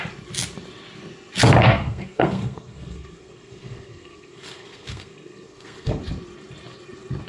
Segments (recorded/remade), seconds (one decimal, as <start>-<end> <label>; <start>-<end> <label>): 0.0-1.6 recorded; 1.6-6.0 remade; 6.0-7.3 recorded